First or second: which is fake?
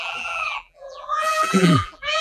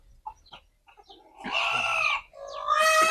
first